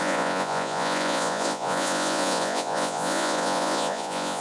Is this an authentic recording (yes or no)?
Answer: no